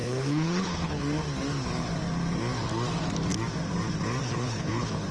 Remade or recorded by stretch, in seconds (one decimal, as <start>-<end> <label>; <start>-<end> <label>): 0.0-1.0 remade; 1.0-4.2 recorded; 4.2-5.1 remade